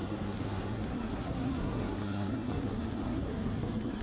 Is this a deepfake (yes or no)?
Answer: yes